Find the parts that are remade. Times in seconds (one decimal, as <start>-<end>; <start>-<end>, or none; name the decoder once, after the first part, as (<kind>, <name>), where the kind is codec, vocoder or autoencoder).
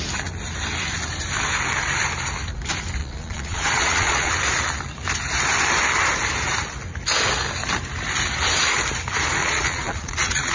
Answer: 3.0-4.3 (vocoder, Vocos); 9.4-10.5